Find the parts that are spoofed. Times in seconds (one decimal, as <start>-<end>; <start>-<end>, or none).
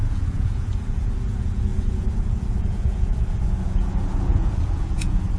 0.0-5.4